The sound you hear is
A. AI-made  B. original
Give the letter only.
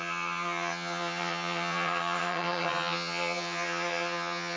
A